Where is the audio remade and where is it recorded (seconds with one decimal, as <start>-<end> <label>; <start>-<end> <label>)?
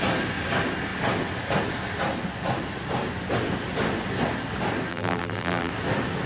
0.0-4.9 recorded; 4.9-5.7 remade; 5.7-6.3 recorded